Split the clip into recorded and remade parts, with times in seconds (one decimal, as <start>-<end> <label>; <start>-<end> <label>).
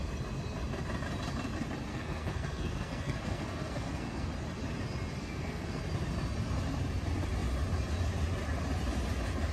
0.0-1.9 recorded; 1.9-4.3 remade; 4.3-5.2 recorded; 5.2-5.8 remade; 5.8-9.5 recorded